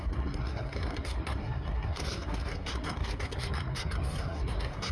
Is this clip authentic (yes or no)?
no